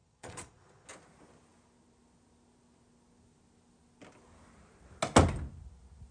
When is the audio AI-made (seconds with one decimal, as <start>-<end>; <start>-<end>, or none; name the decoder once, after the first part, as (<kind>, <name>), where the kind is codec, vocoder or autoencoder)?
0.0-0.9 (vocoder, Vocos)